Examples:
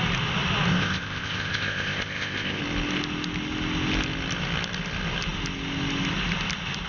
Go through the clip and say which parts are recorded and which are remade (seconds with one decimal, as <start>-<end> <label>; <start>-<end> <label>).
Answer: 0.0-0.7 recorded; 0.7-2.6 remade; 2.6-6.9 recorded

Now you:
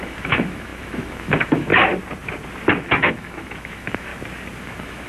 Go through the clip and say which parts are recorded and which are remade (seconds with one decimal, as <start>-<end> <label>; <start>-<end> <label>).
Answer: 0.0-1.7 remade; 1.7-2.8 recorded; 2.8-4.1 remade; 4.1-4.6 recorded; 4.6-5.1 remade

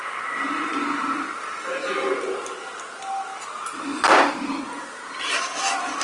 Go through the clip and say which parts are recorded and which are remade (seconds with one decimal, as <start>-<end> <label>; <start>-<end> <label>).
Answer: 0.0-6.0 recorded